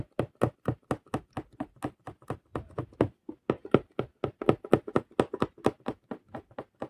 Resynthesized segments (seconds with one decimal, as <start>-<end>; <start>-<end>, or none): none